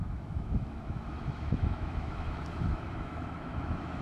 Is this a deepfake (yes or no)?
yes